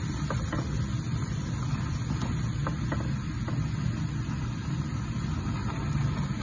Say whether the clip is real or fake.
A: real